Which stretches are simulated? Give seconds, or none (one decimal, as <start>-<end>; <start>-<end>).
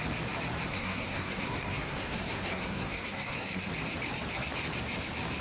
0.7-3.7